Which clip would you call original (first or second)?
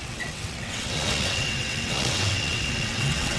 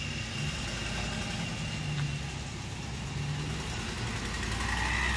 second